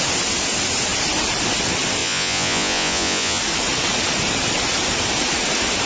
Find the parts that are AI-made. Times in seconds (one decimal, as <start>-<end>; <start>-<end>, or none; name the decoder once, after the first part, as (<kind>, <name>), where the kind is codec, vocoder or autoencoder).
2.0-3.4 (vocoder, Vocos)